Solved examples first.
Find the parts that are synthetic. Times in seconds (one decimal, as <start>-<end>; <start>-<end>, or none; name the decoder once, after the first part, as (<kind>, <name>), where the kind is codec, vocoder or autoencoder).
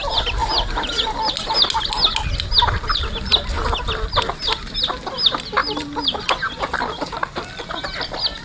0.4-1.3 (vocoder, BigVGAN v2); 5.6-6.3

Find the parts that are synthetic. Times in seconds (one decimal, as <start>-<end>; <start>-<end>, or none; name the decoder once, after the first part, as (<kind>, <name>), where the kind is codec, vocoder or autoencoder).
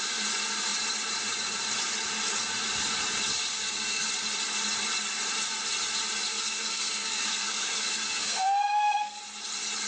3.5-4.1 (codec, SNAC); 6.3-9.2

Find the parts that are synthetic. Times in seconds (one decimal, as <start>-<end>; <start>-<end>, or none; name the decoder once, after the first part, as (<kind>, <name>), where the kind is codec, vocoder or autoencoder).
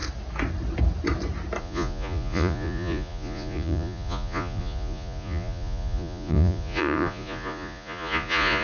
1.6-8.6 (vocoder, Vocos)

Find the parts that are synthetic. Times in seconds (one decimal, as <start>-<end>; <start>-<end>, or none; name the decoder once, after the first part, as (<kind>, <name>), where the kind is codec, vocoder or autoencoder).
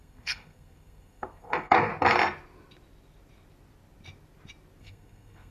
0.0-1.9 (codec, SNAC); 4.8-5.5